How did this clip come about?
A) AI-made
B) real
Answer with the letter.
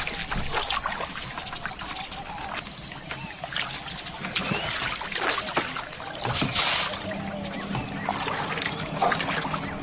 B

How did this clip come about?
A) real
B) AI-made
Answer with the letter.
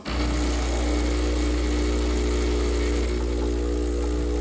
A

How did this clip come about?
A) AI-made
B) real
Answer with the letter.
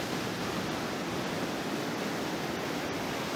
B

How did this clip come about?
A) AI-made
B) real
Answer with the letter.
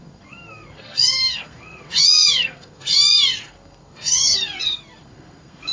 A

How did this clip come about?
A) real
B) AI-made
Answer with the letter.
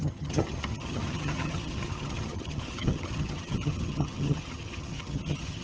B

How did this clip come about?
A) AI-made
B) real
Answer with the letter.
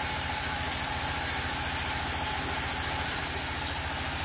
B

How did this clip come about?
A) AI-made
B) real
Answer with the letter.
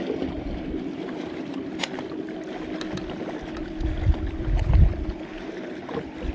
B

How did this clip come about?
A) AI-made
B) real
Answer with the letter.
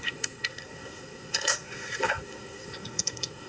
A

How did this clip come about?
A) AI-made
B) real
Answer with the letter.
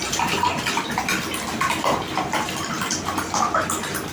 B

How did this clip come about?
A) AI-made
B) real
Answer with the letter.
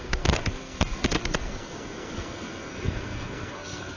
A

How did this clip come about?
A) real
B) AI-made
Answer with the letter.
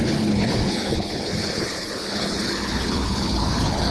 B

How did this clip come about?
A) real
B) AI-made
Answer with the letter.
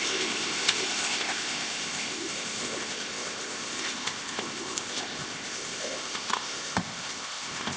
B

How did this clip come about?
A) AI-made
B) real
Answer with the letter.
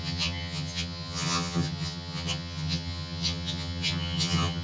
A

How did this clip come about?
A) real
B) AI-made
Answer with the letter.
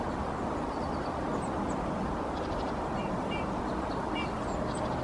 B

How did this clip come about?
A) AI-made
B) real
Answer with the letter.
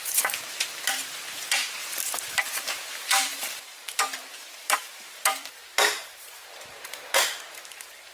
A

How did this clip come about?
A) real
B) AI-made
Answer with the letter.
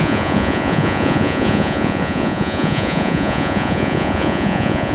B